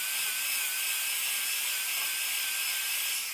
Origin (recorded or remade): recorded